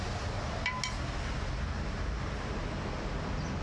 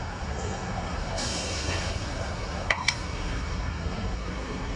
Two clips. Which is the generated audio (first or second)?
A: second